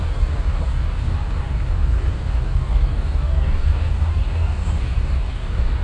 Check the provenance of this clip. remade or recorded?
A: remade